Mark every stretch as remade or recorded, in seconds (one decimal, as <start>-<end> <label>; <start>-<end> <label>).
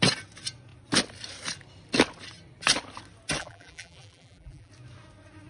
0.0-3.4 recorded; 3.4-4.7 remade; 4.7-5.5 recorded